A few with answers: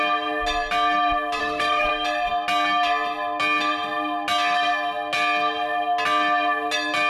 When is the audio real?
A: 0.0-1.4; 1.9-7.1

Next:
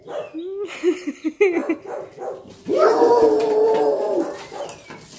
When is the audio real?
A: 0.0-5.2

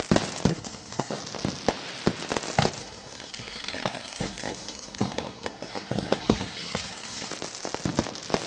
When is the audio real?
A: 0.0-0.5; 1.2-2.8; 7.3-8.5

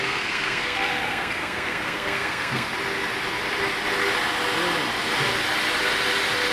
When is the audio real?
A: 2.7-6.5

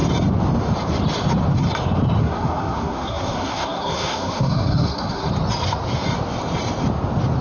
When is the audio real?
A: 0.0-2.2; 5.3-7.4

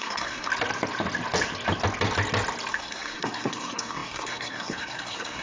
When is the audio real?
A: 0.5-2.7